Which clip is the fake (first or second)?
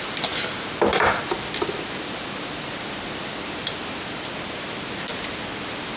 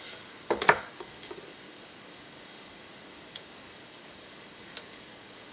second